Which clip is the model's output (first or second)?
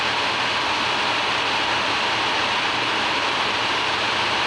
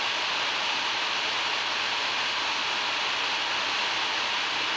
first